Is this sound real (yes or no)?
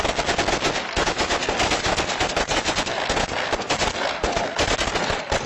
yes